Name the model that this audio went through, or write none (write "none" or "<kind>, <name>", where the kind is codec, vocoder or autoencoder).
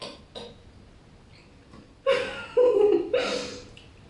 none